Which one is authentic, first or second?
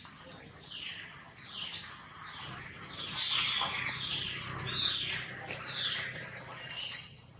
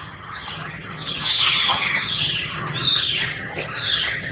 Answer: first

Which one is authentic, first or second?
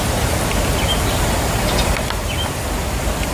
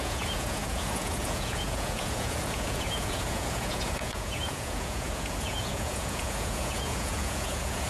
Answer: first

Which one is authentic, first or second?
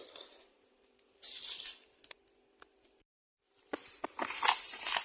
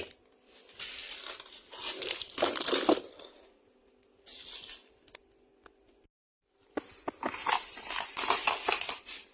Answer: second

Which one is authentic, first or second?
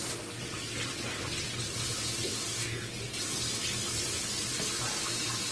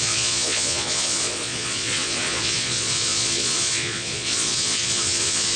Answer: first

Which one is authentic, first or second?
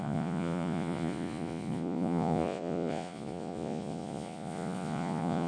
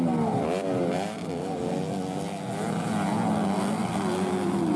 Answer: second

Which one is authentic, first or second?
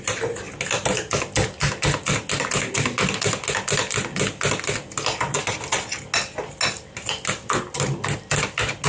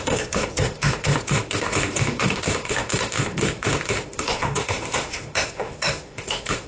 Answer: first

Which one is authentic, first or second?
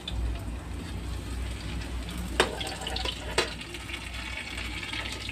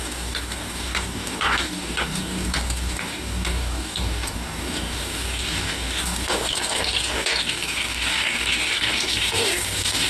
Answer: first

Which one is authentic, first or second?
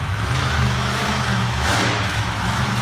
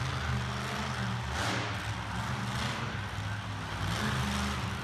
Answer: second